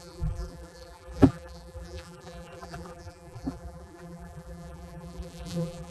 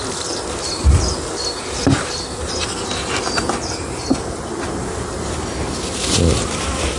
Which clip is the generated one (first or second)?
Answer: first